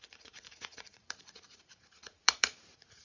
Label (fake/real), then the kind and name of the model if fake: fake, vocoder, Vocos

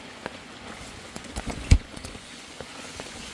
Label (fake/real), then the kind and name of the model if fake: fake, vocoder, Vocos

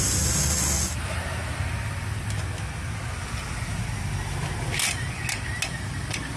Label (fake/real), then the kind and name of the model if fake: real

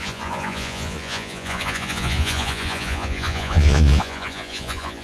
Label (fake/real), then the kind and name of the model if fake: fake, vocoder, Vocos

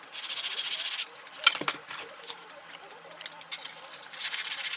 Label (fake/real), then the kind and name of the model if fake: real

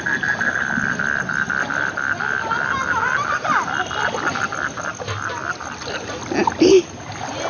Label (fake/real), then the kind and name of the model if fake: real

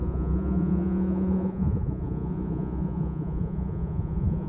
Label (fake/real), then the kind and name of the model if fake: fake, vocoder, Vocos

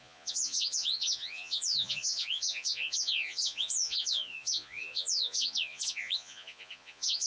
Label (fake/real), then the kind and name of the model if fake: fake, vocoder, Vocos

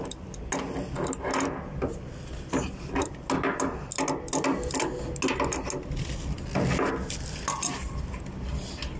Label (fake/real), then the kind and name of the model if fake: real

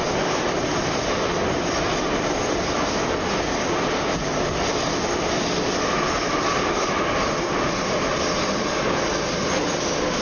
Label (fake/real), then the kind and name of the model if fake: real